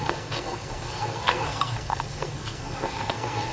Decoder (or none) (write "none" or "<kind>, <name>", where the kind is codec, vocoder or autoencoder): codec, SNAC